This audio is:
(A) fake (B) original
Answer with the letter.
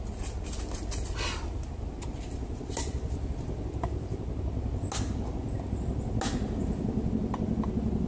B